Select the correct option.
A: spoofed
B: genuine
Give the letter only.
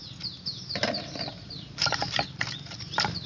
B